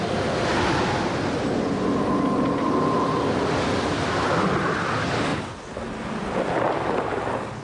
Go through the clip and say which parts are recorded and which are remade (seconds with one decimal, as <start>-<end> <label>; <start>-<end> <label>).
0.0-5.3 recorded; 5.3-6.7 remade; 6.7-7.6 recorded